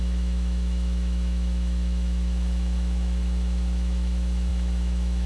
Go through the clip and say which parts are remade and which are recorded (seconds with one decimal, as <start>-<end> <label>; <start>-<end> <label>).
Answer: 0.0-5.3 remade